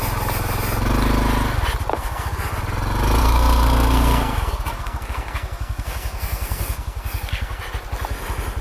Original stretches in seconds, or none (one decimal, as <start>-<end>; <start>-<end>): 0.0-1.9; 2.5-3.2; 7.6-8.6